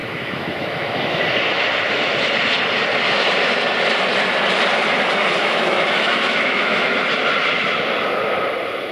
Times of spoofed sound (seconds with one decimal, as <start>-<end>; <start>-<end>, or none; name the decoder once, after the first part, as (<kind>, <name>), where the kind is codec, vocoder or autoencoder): 0.0-1.2 (autoencoder, DAC-VAE); 5.4-7.0